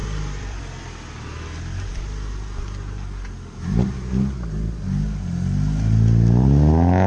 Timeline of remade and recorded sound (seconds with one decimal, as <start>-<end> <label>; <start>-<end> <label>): 0.0-0.6 remade; 0.6-7.1 recorded